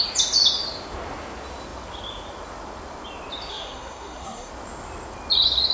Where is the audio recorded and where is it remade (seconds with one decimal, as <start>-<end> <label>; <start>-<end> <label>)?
0.0-3.5 recorded; 3.5-4.5 remade; 4.5-5.7 recorded